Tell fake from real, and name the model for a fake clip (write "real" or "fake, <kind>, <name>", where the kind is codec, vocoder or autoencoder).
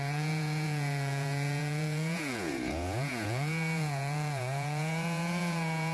fake, vocoder, Vocos